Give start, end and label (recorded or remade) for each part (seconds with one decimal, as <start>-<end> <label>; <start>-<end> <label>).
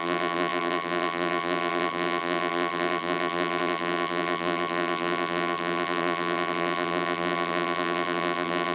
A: 0.0-8.7 remade